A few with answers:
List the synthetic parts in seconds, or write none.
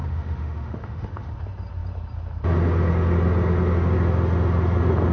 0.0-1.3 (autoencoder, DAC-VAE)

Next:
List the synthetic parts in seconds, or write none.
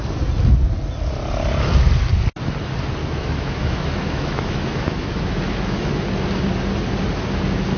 3.0-6.0 (autoencoder, DAC-VAE)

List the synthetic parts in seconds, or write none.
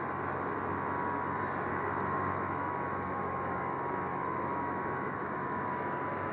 1.7-3.6 (autoencoder, DAC-VAE); 4.1-6.3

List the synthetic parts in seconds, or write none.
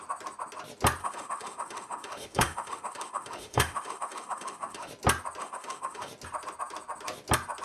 1.0-4.9 (autoencoder, DAC-VAE); 5.4-6.1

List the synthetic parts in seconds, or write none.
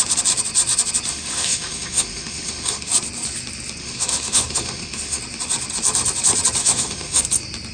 1.1-2.9 (autoencoder, DAC-VAE); 3.8-5.2; 6.6-7.2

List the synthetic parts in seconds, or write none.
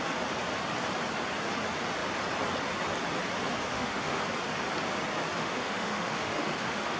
3.7-4.2 (autoencoder, DAC-VAE); 5.4-7.0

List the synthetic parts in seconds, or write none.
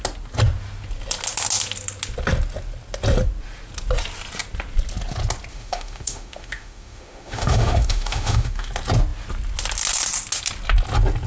5.5-8.7 (autoencoder, DAC-VAE)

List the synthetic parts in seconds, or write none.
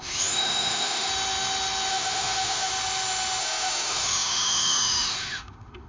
0.0-1.1 (autoencoder, DAC-VAE); 1.9-2.7; 3.4-5.9